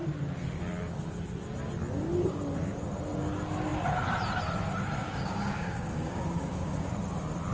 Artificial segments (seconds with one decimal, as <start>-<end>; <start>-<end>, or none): 5.0-6.9